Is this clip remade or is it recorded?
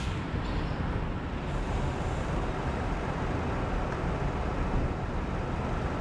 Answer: recorded